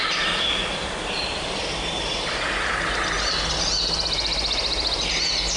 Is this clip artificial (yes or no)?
yes